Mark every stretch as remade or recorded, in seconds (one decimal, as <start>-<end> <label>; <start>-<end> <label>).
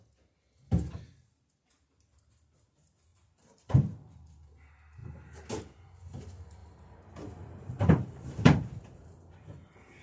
0.0-3.1 recorded; 3.1-4.3 remade; 4.3-6.6 recorded; 6.6-8.7 remade; 8.7-10.0 recorded